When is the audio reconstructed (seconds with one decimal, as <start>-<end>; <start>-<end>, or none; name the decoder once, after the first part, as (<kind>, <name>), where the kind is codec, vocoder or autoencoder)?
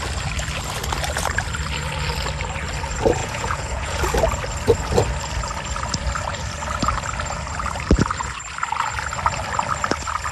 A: 3.2-4.0 (vocoder, Vocos)